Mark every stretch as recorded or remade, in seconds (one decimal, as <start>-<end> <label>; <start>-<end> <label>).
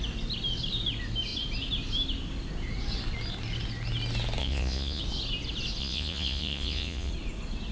0.0-4.4 recorded; 4.4-5.0 remade; 5.0-5.8 recorded; 5.8-7.1 remade; 7.1-7.7 recorded